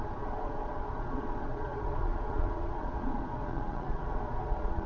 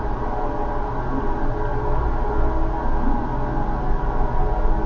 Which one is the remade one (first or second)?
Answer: first